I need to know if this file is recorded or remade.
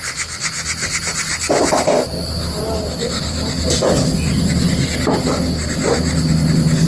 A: recorded